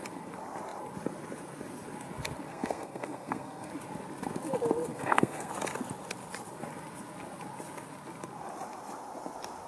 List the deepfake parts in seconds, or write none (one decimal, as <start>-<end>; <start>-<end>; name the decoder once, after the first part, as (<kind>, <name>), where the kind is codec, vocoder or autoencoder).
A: 2.5-3.7 (codec, SNAC); 4.9-5.5